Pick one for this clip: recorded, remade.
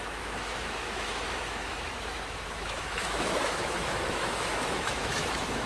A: remade